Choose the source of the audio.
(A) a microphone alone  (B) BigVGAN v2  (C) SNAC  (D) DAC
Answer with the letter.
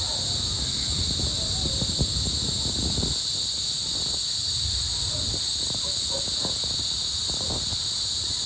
A